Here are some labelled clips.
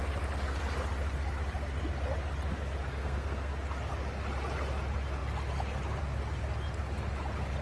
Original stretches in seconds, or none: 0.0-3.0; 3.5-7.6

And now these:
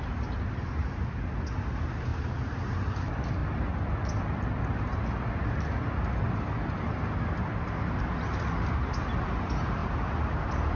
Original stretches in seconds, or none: 0.0-10.8

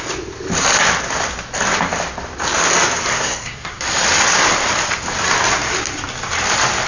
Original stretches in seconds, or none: 0.0-3.1; 3.8-6.9

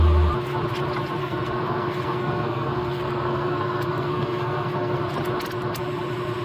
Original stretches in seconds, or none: 0.0-1.2; 5.0-6.4

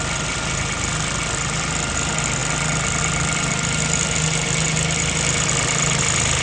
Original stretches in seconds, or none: 0.0-6.4

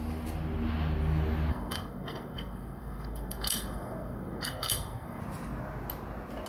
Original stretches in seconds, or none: 0.0-1.5; 5.2-6.5

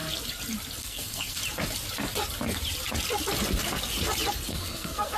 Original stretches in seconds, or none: 0.0-0.8; 1.4-4.5